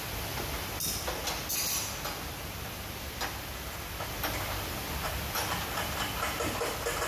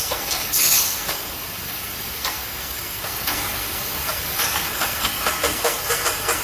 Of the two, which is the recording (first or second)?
first